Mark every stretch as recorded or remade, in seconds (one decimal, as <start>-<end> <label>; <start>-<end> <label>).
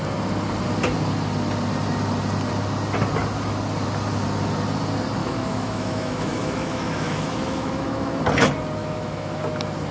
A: 0.0-5.2 recorded; 5.2-8.2 remade; 8.2-8.8 recorded; 8.8-9.4 remade; 9.4-9.9 recorded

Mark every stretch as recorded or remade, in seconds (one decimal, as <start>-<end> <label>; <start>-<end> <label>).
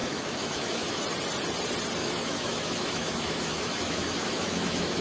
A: 0.0-1.0 remade; 1.0-2.0 recorded; 2.0-5.0 remade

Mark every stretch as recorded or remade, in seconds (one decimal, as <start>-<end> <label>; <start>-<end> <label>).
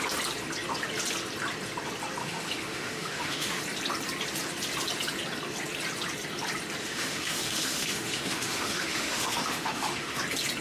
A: 0.0-2.2 recorded; 2.2-3.6 remade; 3.6-6.8 recorded; 6.8-10.2 remade; 10.2-10.6 recorded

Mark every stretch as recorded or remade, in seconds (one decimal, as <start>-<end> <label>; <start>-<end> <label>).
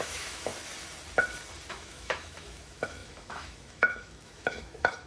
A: 0.0-0.5 remade; 0.5-1.7 recorded; 1.7-5.1 remade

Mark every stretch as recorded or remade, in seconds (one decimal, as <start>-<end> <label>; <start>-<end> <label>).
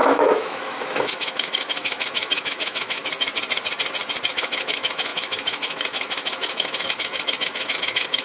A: 0.0-3.0 remade; 3.0-4.3 recorded; 4.3-8.2 remade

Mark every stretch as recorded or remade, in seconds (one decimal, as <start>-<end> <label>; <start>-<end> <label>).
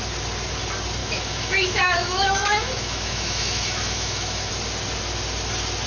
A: 0.0-1.0 recorded; 1.0-4.5 remade; 4.5-5.9 recorded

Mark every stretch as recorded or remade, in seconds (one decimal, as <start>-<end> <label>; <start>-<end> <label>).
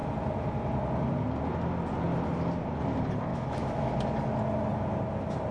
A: 0.0-3.3 recorded; 3.3-3.9 remade; 3.9-5.5 recorded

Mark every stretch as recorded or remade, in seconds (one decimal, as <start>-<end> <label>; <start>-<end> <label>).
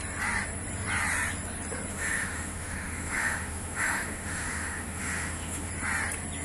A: 0.0-1.9 recorded; 1.9-5.7 remade; 5.7-6.4 recorded